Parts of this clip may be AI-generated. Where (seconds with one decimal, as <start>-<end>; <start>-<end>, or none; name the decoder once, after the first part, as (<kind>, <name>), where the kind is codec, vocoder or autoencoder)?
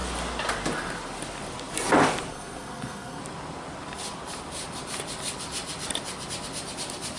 2.3-3.2 (codec, SNAC)